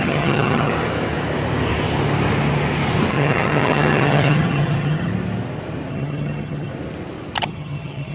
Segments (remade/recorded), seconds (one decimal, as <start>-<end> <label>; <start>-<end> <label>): 0.0-0.7 remade; 0.7-3.1 recorded; 3.1-5.1 remade; 5.1-5.9 recorded; 5.9-6.7 remade; 6.7-7.4 recorded; 7.4-8.1 remade